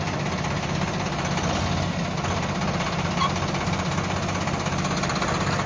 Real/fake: real